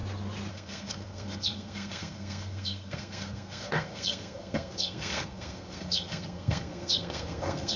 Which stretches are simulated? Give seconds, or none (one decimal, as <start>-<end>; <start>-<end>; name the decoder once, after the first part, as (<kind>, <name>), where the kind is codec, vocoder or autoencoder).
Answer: 0.5-7.8 (codec, SNAC)